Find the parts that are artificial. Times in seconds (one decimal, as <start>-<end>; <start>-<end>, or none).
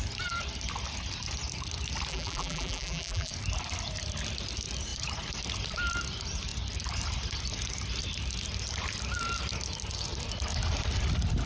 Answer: 2.1-3.3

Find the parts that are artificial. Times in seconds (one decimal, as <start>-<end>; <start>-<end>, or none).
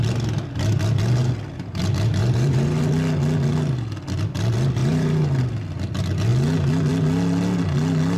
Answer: 2.2-2.8; 4.8-5.4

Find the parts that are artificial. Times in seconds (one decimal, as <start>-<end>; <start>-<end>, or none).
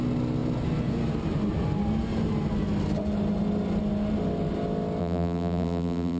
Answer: 5.0-6.2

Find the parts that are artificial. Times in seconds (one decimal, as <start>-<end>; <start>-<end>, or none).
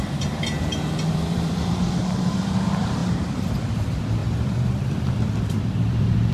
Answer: 0.0-6.3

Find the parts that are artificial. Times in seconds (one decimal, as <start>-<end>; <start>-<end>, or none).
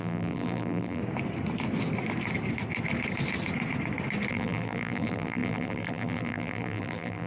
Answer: 0.0-1.0; 4.3-7.3